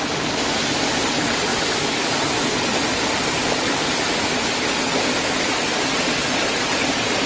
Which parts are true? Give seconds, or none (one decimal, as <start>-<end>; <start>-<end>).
0.0-7.3